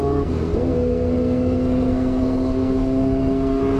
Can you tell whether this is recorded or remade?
remade